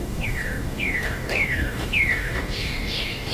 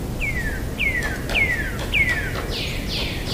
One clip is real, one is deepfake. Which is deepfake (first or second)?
first